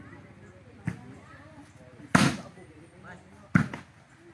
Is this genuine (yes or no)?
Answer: yes